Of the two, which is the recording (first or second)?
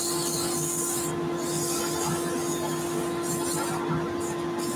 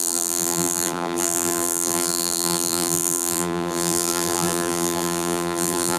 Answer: first